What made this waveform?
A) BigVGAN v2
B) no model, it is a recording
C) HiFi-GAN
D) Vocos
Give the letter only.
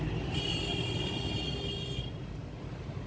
B